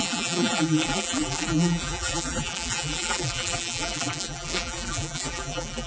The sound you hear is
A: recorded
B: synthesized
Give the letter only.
B